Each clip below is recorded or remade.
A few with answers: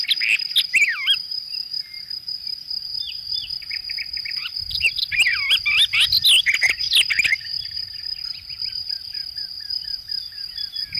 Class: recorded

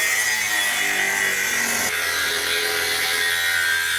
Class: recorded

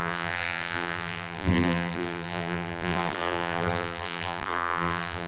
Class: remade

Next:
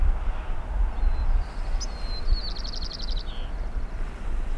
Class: recorded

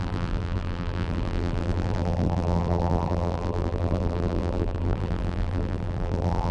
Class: remade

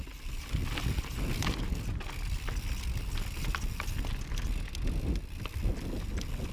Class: recorded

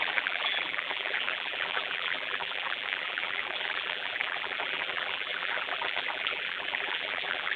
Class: remade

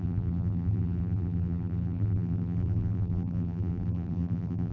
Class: remade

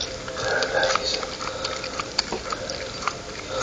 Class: recorded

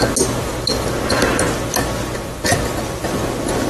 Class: recorded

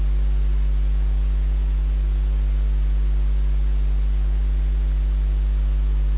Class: recorded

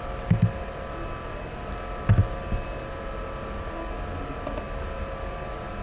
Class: recorded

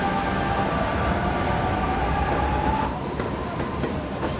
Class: recorded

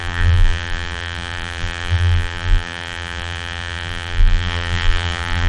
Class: remade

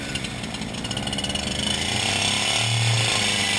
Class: recorded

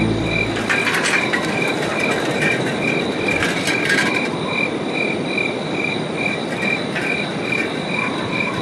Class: recorded